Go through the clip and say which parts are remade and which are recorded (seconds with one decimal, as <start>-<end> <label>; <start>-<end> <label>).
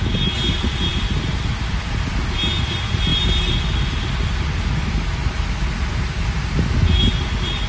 0.0-7.7 recorded